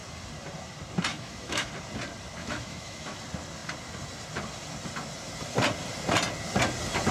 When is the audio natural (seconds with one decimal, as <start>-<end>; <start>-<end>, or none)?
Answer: 0.0-1.1; 1.7-2.4; 3.2-7.1